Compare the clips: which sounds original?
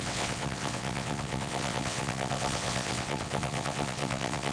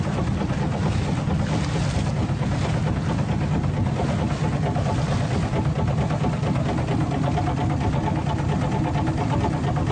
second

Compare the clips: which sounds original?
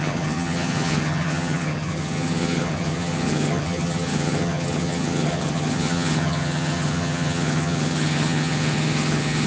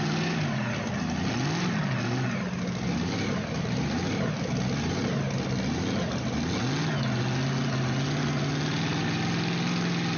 second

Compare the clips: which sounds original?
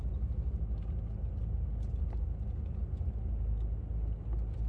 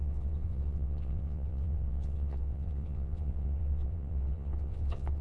first